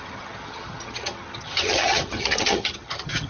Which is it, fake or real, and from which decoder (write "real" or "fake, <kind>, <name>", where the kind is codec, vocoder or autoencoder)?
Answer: fake, vocoder, HiFi-GAN